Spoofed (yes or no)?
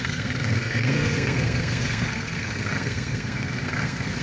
yes